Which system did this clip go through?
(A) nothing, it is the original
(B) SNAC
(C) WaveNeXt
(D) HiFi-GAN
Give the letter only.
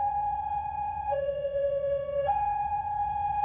C